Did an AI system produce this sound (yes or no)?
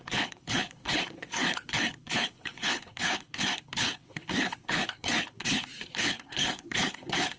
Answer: yes